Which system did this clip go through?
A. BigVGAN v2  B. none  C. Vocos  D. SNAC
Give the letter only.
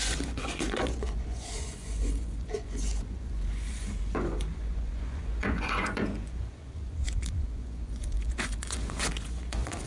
C